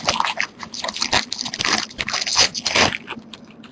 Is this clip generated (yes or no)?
no